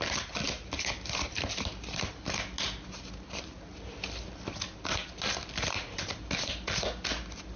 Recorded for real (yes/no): yes